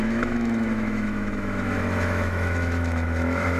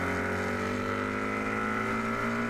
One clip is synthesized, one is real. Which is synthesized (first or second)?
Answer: first